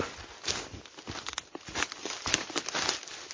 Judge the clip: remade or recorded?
recorded